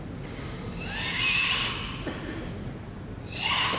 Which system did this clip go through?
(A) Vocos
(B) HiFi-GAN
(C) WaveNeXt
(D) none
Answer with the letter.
D